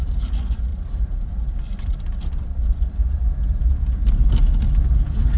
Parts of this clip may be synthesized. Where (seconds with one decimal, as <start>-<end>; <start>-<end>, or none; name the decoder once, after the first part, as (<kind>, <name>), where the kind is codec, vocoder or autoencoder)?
0.7-3.9 (vocoder, BigVGAN v2)